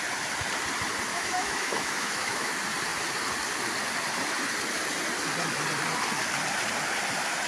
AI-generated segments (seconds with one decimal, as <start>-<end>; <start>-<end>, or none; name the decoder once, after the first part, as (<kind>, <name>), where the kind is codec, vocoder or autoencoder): 1.1-2.5 (autoencoder, DAC-VAE)